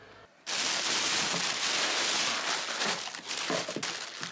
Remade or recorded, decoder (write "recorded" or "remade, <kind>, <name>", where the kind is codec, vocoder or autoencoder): recorded